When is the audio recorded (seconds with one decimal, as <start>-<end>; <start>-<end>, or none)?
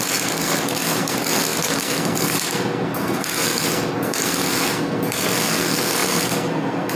none